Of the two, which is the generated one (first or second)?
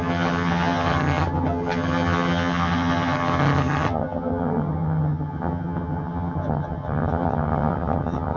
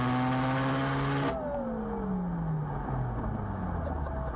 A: first